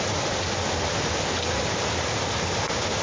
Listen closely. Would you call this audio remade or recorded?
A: recorded